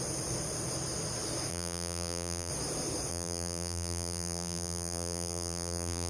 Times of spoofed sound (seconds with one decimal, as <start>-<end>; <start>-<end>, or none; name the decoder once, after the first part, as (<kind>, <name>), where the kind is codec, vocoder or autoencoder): 1.5-2.5 (vocoder, BigVGAN v2); 3.1-6.1